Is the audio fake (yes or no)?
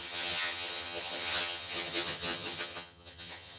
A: yes